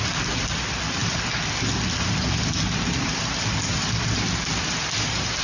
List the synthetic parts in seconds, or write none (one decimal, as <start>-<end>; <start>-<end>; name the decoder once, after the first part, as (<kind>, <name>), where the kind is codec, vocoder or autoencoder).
none